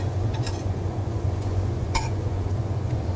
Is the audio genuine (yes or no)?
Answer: no